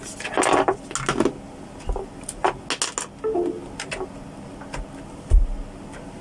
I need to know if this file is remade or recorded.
recorded